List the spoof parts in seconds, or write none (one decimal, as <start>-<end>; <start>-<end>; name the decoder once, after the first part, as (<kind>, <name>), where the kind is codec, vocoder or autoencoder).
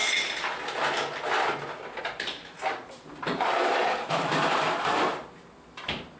2.4-5.5 (vocoder, BigVGAN v2)